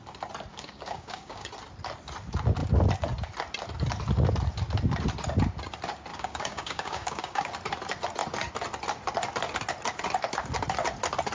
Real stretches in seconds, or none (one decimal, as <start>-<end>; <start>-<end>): 0.0-0.5; 1.5-6.1; 7.5-11.3

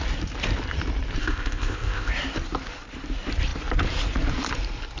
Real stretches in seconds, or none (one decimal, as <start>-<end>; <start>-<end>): 0.0-1.2; 2.1-5.0

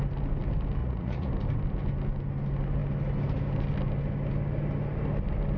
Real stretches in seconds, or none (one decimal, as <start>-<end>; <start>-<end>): 0.0-0.8; 1.3-5.6

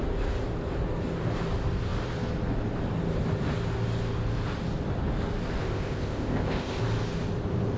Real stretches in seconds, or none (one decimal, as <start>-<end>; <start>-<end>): 0.0-5.6; 6.8-7.8

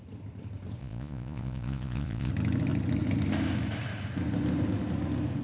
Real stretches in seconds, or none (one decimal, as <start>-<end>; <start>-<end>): 0.0-0.8; 2.3-5.4

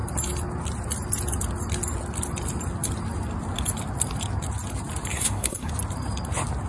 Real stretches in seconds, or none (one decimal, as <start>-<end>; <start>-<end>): 0.0-5.1; 5.7-6.7

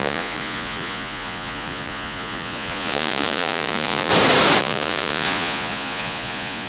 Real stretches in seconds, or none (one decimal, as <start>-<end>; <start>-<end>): 4.1-4.6